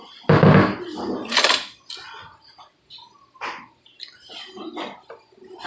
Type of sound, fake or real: real